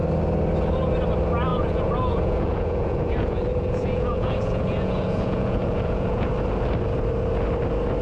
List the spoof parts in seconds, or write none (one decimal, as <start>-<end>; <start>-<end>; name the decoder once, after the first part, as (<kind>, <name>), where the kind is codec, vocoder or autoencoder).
1.5-6.3 (vocoder, Vocos)

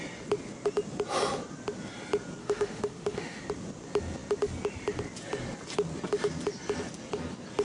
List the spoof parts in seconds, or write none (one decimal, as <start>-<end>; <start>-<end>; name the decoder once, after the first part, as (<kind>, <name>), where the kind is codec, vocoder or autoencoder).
2.4-3.4 (autoencoder, DAC-VAE)

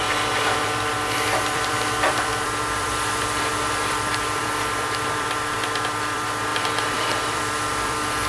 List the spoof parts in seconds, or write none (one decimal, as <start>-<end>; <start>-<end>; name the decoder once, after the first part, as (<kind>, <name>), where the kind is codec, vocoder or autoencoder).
0.0-8.3 (vocoder, BigVGAN v2)

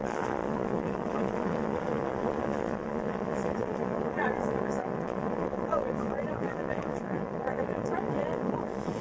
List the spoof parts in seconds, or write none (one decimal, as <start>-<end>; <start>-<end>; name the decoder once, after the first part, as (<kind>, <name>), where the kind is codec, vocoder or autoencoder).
0.0-9.0 (vocoder, Vocos)

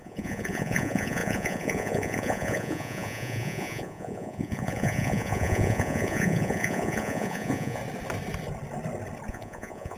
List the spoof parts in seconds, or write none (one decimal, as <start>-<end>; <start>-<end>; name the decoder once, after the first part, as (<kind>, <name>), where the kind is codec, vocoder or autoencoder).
0.0-7.8 (vocoder, Vocos); 9.3-10.0

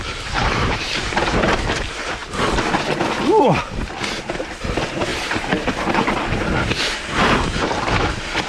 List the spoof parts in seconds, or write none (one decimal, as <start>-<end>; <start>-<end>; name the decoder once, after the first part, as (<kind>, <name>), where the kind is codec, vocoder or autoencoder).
0.4-1.1 (vocoder, BigVGAN v2); 5.1-6.2